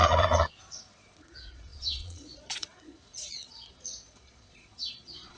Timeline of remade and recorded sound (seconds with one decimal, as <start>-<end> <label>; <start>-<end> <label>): 0.0-5.4 remade